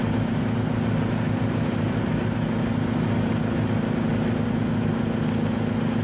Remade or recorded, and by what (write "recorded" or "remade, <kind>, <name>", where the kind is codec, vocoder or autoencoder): recorded